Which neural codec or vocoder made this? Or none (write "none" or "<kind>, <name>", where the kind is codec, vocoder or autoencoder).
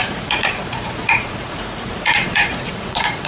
vocoder, Vocos